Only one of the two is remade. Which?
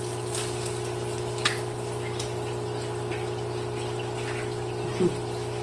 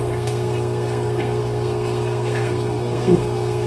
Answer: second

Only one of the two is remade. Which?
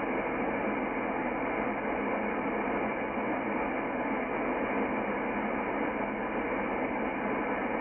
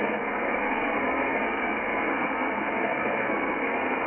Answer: second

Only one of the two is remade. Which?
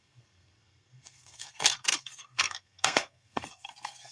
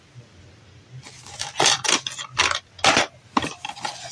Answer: first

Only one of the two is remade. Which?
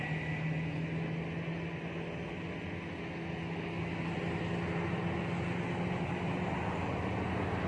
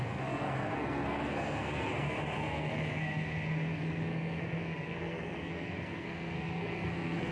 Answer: second